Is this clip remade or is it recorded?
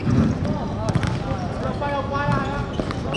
recorded